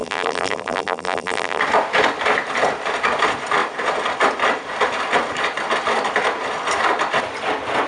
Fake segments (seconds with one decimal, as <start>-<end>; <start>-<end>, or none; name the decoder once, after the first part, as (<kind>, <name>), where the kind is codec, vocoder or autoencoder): 0.0-1.6 (vocoder, BigVGAN v2)